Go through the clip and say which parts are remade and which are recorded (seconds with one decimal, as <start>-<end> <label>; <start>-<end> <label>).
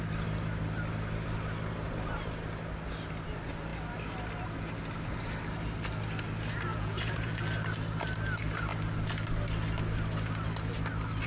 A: 0.0-6.7 recorded; 6.7-7.4 remade; 7.4-11.3 recorded